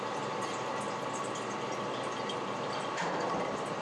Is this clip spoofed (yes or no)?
no